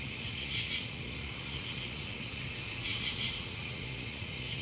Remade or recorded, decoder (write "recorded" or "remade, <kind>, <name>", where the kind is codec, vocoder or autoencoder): remade, vocoder, Vocos